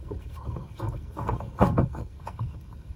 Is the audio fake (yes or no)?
yes